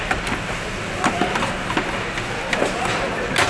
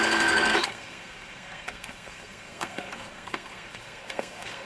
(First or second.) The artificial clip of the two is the second